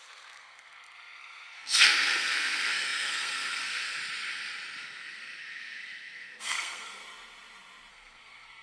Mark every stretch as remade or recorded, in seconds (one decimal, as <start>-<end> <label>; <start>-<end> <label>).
0.0-4.0 remade; 4.0-4.8 recorded; 4.8-7.0 remade; 7.0-7.9 recorded; 7.9-8.6 remade

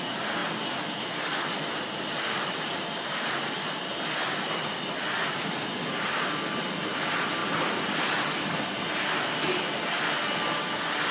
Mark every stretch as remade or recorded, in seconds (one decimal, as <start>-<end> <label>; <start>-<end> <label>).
0.0-11.1 recorded